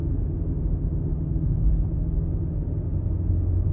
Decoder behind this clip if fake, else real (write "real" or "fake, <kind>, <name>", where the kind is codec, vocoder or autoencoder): real